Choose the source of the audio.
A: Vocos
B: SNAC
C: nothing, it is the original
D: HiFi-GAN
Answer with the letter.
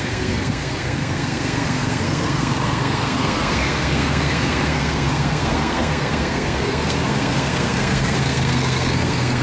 B